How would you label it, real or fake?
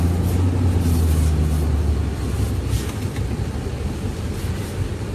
real